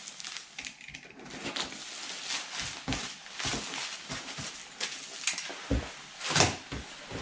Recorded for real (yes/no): yes